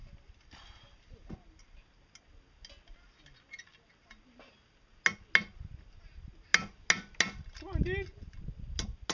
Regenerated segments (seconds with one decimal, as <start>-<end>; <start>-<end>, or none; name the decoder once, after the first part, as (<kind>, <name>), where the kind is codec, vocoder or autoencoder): none